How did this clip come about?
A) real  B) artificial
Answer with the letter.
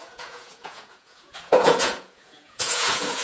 B